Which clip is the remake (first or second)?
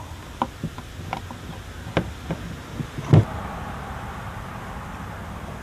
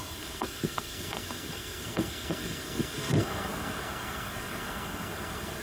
second